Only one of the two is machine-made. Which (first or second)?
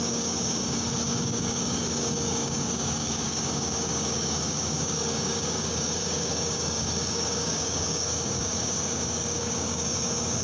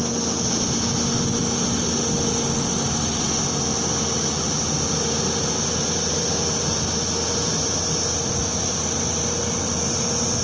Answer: first